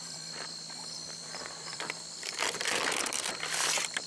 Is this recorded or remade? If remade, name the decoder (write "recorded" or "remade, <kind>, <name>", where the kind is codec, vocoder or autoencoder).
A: remade, vocoder, BigVGAN v2